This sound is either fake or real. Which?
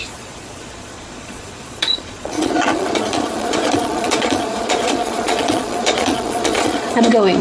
fake